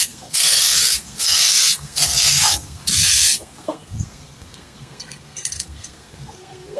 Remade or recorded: remade